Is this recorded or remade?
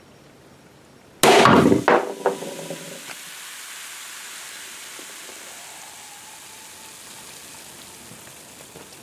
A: recorded